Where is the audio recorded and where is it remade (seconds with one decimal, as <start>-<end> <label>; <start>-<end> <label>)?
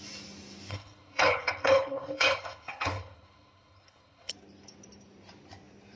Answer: 0.0-0.7 recorded; 0.7-4.3 remade; 4.3-6.0 recorded